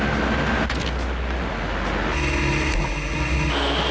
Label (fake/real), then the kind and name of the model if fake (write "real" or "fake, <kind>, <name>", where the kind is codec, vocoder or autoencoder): real